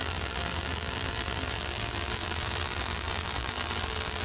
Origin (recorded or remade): remade